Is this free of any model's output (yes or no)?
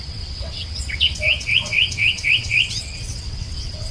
no